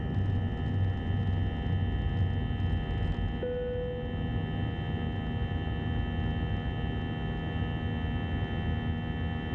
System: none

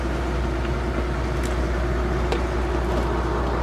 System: none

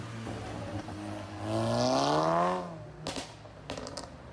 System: none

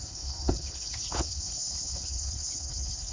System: codec, HILCodec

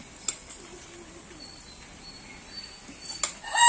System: none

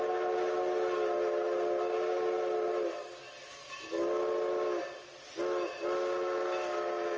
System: none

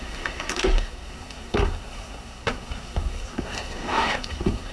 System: codec, SNAC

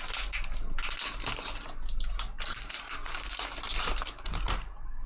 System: none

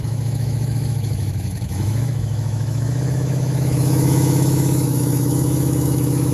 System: autoencoder, DAC-VAE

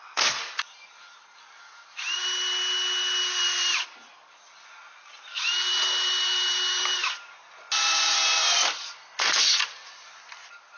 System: none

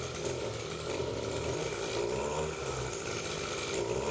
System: none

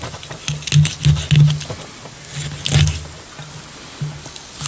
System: none